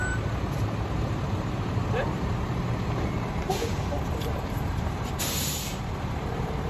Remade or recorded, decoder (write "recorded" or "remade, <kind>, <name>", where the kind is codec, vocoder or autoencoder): remade, vocoder, BigVGAN v2